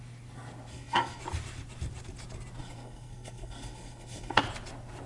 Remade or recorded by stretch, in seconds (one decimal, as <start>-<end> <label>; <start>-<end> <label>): 0.0-0.7 recorded; 0.7-1.2 remade; 1.2-2.6 recorded; 2.6-4.4 remade; 4.4-5.1 recorded